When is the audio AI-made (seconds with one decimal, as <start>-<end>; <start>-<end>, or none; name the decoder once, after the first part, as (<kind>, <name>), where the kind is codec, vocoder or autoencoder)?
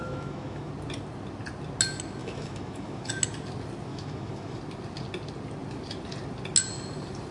0.0-0.7 (autoencoder, DAC-VAE); 2.2-3.1; 3.9-4.6